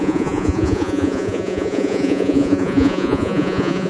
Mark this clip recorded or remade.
remade